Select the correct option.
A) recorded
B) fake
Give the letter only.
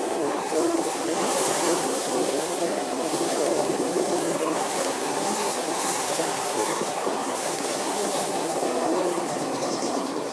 B